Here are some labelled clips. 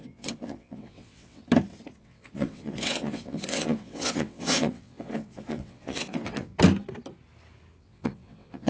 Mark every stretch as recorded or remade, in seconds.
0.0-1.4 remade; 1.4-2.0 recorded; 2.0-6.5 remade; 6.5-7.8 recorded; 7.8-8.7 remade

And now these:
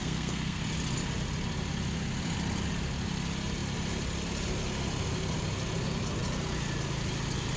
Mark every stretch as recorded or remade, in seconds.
0.0-0.6 remade; 0.6-7.6 recorded